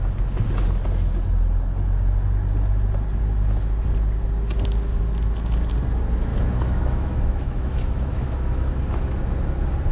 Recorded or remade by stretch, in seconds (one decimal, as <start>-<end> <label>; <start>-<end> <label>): 0.0-6.3 recorded; 6.3-8.7 remade; 8.7-9.9 recorded